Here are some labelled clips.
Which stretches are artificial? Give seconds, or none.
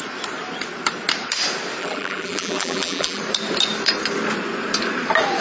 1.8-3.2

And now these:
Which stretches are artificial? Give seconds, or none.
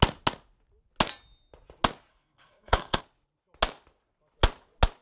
2.1-3.0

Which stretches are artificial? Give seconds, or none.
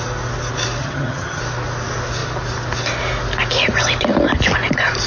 0.8-1.4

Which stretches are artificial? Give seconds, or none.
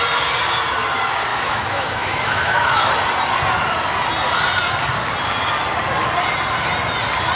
1.3-2.9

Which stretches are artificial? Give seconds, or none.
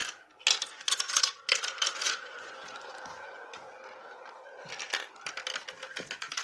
0.5-3.8; 6.0-6.4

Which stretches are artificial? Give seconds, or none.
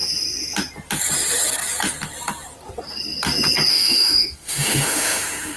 3.7-5.6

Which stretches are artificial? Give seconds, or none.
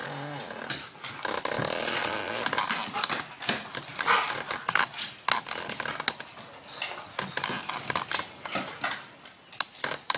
none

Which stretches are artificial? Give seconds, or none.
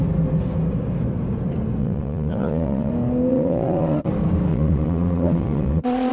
1.8-2.9; 3.3-4.1; 4.5-6.1